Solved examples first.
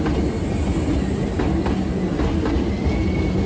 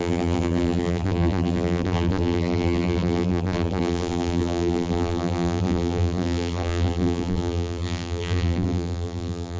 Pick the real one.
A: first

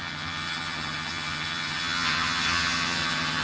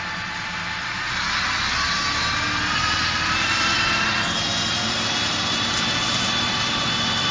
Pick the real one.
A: second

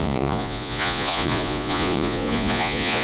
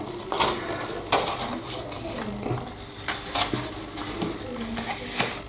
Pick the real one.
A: second